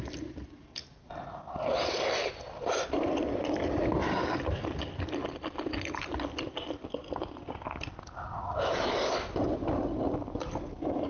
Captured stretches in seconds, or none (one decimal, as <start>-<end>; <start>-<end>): 0.0-11.1